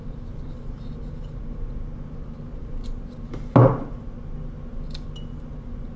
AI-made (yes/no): no